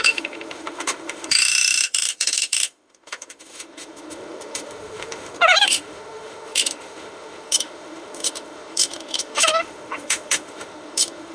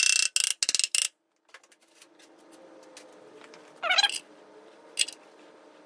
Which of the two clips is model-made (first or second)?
first